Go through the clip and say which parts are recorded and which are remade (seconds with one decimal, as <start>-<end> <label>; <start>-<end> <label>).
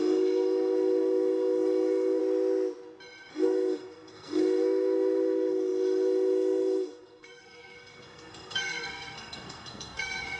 0.0-2.2 remade; 2.2-3.3 recorded; 3.3-10.4 remade